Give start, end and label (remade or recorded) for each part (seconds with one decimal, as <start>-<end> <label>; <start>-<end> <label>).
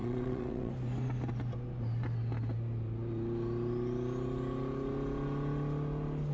0.0-0.7 remade; 0.7-6.3 recorded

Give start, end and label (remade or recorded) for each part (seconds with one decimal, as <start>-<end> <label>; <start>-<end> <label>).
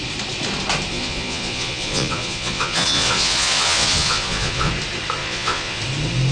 0.0-0.9 recorded; 0.9-4.7 remade; 4.7-5.2 recorded; 5.2-5.8 remade; 5.8-6.3 recorded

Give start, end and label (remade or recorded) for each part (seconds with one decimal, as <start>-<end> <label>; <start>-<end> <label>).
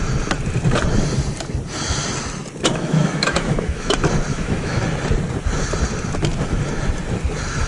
0.0-2.7 recorded; 2.7-3.9 remade; 3.9-4.3 recorded; 4.3-4.8 remade; 4.8-7.7 recorded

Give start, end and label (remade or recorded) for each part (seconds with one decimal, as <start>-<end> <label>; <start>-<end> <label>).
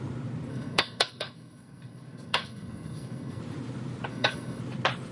0.0-0.5 recorded; 0.5-3.4 remade; 3.4-4.1 recorded; 4.1-4.6 remade; 4.6-5.1 recorded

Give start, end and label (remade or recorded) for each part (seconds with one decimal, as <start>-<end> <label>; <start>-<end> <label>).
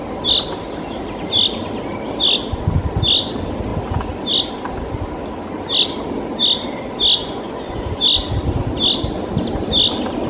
0.0-7.2 recorded; 7.2-8.0 remade; 8.0-10.3 recorded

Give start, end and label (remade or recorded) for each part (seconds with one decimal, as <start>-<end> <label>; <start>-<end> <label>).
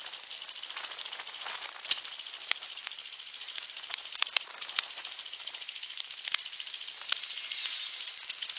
0.0-2.4 recorded; 2.4-6.1 remade; 6.1-8.6 recorded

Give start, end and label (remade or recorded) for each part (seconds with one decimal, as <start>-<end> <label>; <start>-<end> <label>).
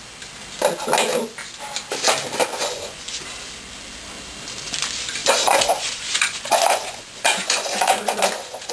0.0-2.5 recorded; 2.5-3.2 remade; 3.2-5.2 recorded; 5.2-8.7 remade